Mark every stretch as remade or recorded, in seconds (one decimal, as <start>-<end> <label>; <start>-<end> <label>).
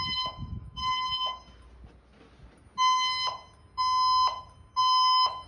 0.0-1.4 remade; 1.4-4.7 recorded; 4.7-5.5 remade